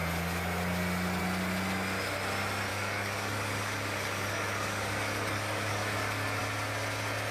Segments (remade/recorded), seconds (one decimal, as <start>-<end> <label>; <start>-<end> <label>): 0.0-2.7 recorded; 2.7-6.4 remade; 6.4-7.3 recorded

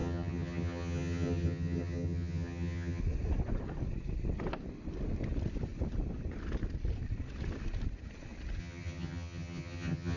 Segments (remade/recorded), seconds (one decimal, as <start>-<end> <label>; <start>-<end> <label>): 0.0-3.0 remade; 3.0-8.6 recorded; 8.6-10.2 remade

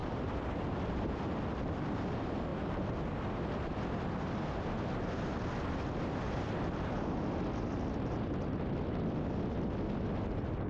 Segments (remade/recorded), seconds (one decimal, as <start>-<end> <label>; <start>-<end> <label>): 0.0-10.7 recorded

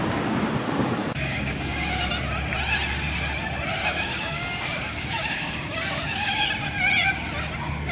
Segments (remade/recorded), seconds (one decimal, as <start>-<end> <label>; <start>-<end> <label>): 0.0-1.0 recorded; 1.0-2.1 remade; 2.1-3.8 recorded; 3.8-6.5 remade; 6.5-7.9 recorded

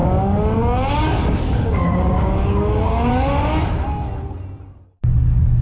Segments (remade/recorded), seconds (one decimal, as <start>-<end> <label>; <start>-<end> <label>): 0.0-3.1 remade; 3.1-5.6 recorded

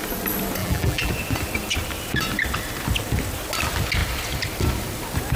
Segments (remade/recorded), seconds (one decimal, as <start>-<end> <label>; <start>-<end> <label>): 0.0-0.6 recorded; 0.6-1.1 remade; 1.1-5.4 recorded